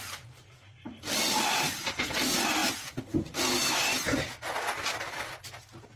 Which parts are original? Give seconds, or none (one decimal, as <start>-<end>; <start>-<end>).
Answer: 0.0-6.0